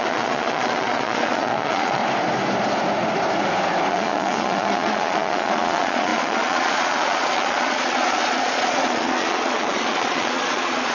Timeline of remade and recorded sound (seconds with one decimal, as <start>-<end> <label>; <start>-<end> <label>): 0.0-2.0 remade; 2.0-3.9 recorded; 3.9-10.9 remade